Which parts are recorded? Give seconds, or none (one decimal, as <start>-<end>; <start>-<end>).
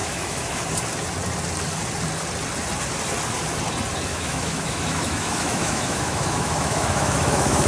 0.6-4.1